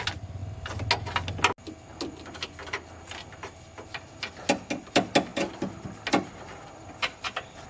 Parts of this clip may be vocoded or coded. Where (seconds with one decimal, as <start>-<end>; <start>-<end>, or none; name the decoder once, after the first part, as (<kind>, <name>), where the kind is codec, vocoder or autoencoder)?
none